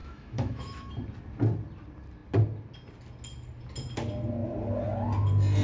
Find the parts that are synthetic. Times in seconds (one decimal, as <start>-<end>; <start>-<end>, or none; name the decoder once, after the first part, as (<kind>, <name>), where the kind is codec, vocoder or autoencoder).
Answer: 0.0-0.9 (autoencoder, DAC-VAE)